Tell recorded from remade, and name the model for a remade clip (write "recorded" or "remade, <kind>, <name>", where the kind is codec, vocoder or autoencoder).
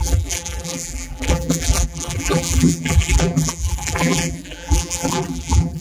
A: remade, vocoder, BigVGAN v2